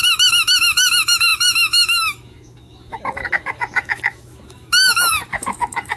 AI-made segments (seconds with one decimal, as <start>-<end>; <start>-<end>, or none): 0.0-6.0